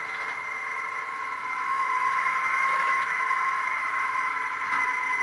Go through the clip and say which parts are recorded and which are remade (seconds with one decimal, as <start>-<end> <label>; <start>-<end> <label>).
0.0-1.4 recorded; 1.4-4.5 remade; 4.5-5.2 recorded